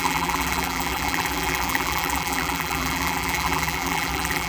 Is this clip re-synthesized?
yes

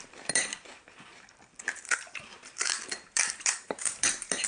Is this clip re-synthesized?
yes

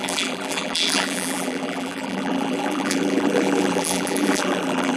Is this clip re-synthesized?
yes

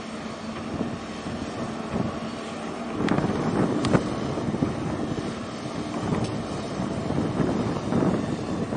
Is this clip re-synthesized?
no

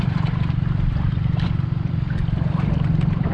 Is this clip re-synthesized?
yes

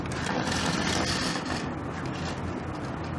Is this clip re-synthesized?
no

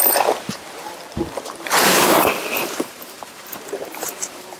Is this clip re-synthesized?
yes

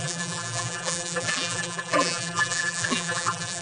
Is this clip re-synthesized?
yes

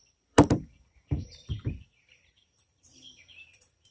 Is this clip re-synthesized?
yes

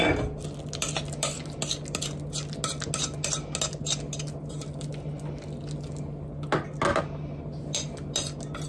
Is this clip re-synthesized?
no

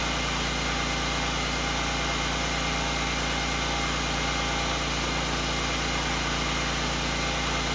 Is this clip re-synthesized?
no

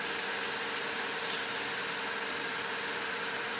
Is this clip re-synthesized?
no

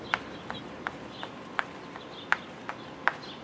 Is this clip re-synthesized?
no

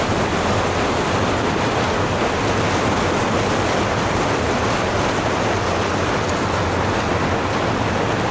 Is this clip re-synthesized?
no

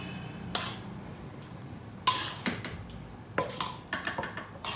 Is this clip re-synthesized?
no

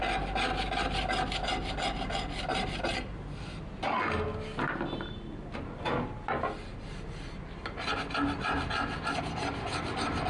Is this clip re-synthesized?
no